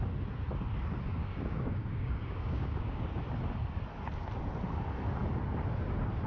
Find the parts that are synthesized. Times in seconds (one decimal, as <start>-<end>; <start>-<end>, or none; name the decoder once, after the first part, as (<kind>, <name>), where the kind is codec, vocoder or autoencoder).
1.2-3.1 (codec, DAC)